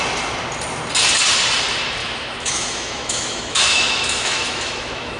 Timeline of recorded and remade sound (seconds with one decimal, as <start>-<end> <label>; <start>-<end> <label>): 0.0-2.0 recorded; 2.0-5.2 remade